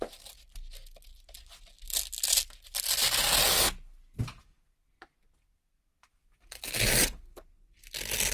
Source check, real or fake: real